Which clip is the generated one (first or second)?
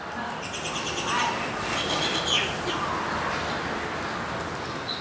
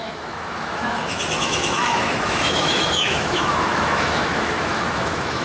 second